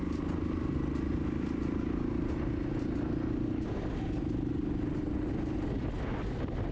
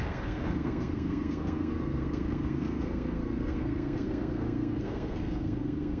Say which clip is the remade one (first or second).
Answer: second